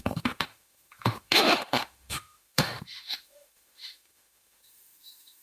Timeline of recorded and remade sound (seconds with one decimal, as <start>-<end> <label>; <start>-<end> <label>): 0.0-5.4 remade